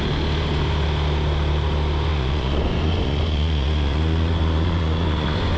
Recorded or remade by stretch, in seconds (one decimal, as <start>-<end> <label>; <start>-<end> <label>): 0.0-2.1 recorded; 2.1-5.6 remade